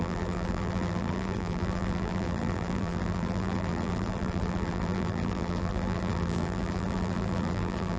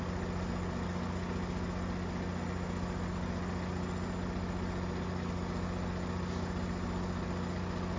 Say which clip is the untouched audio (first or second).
second